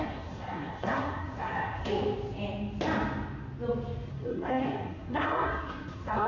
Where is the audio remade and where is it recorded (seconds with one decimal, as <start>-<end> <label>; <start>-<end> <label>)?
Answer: 0.0-1.9 remade; 1.9-4.1 recorded; 4.1-6.3 remade